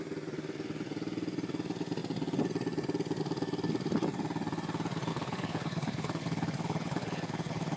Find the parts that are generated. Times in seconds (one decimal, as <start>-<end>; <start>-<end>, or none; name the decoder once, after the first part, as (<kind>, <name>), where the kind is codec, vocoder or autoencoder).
5.1-7.8 (codec, HILCodec)